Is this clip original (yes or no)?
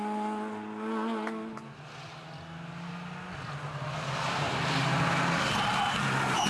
yes